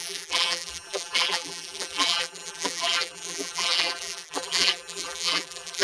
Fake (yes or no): yes